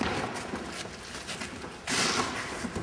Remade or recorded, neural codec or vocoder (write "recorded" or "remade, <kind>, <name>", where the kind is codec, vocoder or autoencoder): remade, vocoder, BigVGAN v2